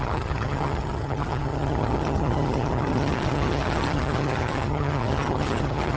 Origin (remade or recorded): remade